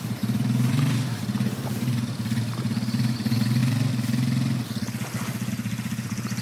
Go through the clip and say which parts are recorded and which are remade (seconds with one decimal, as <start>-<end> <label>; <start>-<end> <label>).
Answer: 0.0-3.6 remade; 3.6-5.5 recorded; 5.5-6.4 remade